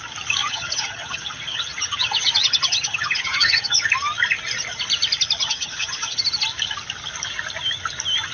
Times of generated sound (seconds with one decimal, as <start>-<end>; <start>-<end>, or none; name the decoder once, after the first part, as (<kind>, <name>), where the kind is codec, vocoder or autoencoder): 0.4-3.9 (vocoder, HiFi-GAN); 5.4-6.2